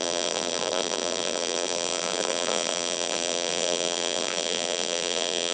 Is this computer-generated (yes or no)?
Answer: yes